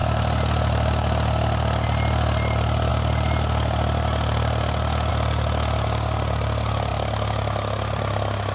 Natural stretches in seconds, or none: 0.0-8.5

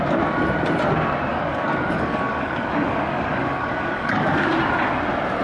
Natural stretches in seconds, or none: 0.0-1.3; 4.5-5.4